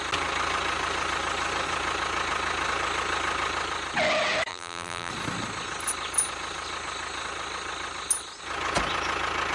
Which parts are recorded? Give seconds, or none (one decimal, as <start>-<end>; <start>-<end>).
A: 0.0-4.5; 5.1-9.5